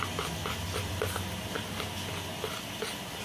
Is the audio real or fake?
real